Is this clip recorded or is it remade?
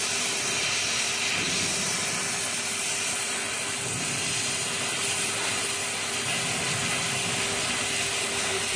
recorded